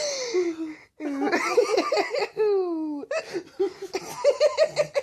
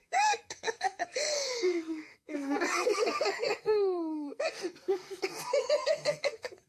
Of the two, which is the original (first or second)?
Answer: first